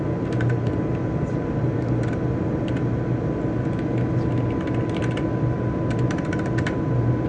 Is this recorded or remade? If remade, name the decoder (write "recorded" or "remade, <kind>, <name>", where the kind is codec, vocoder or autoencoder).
recorded